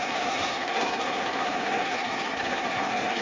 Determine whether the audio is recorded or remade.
remade